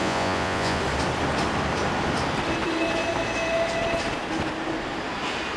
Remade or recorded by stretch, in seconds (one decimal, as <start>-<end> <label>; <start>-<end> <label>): 0.0-0.8 remade; 0.8-5.6 recorded